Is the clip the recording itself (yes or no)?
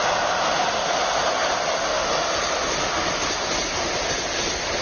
yes